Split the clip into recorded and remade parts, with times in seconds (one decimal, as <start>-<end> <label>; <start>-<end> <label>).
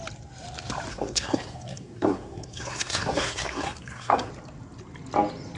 0.0-0.9 recorded; 0.9-4.3 remade; 4.3-5.6 recorded